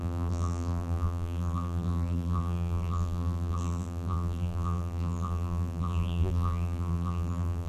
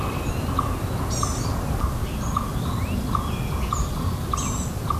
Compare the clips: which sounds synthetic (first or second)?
first